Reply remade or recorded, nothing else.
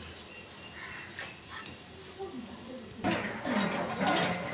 recorded